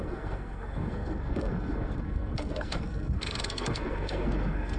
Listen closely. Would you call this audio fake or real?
fake